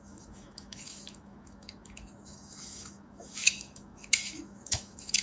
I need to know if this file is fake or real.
fake